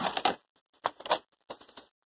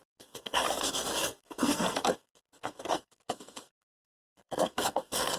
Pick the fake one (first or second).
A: second